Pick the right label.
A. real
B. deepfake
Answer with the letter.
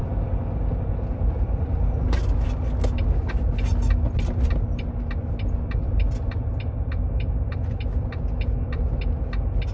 A